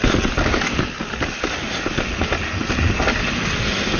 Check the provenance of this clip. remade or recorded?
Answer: recorded